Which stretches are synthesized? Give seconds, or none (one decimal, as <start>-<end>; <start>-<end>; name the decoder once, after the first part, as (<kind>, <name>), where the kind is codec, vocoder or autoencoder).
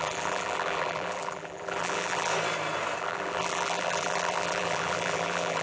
0.0-2.3 (vocoder, BigVGAN v2); 3.0-5.6